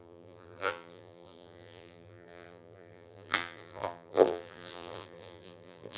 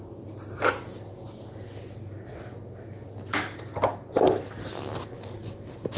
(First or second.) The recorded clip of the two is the second